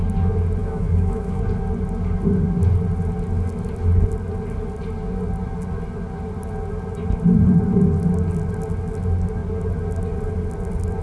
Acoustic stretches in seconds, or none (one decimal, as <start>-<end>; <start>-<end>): 0.0-0.6; 1.4-11.0